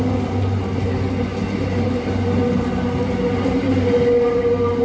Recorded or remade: recorded